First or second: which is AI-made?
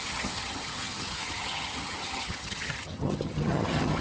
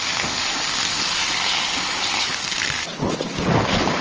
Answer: first